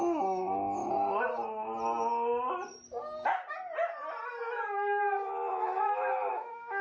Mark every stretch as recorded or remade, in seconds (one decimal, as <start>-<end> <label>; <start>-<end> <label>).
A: 0.0-0.8 remade; 0.8-4.4 recorded; 4.4-6.8 remade